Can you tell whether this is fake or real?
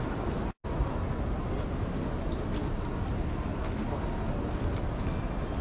real